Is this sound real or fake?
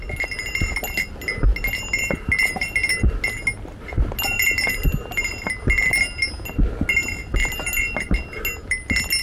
real